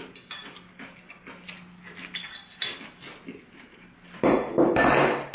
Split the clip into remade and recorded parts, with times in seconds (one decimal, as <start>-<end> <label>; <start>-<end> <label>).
0.0-5.3 recorded